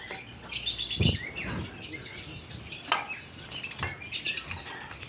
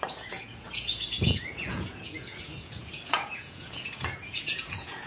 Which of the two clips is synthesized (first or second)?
second